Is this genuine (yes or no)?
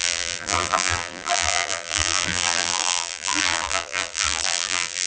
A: no